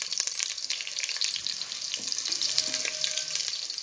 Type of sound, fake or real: real